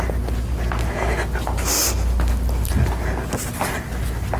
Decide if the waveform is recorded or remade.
recorded